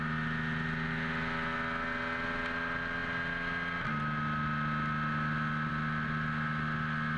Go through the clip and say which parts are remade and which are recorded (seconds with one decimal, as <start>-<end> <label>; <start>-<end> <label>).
0.0-7.2 recorded